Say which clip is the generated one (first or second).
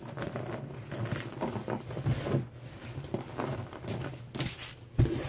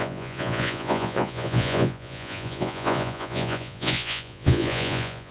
second